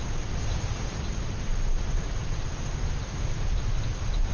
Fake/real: real